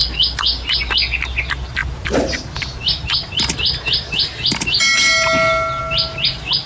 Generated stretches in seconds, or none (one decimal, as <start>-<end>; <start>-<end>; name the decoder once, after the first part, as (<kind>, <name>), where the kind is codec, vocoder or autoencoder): none